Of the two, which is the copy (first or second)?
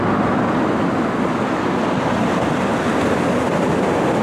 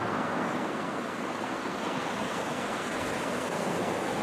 second